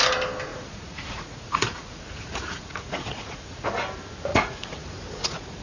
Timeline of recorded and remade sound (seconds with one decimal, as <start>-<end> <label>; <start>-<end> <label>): 0.0-0.5 recorded; 0.5-3.7 remade; 3.7-4.3 recorded; 4.3-5.6 remade